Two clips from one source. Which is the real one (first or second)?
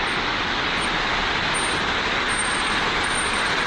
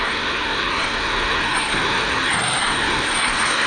first